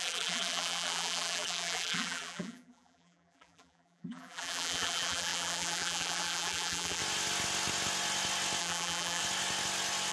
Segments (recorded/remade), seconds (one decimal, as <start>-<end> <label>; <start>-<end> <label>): 0.0-7.0 remade; 7.0-8.6 recorded; 8.6-9.2 remade; 9.2-10.1 recorded